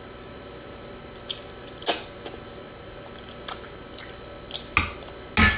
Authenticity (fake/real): real